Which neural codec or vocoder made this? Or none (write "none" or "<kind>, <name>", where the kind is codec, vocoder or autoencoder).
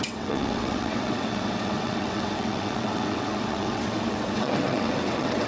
vocoder, WaveNeXt